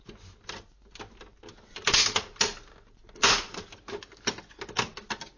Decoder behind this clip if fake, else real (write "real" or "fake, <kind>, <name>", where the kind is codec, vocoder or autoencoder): real